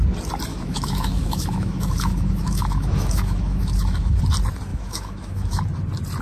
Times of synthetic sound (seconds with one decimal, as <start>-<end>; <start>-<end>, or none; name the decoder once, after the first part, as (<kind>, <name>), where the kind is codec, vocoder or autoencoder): 0.5-4.2 (autoencoder, DAC-VAE); 4.7-5.6